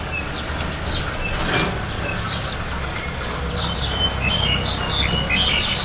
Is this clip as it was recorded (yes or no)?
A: yes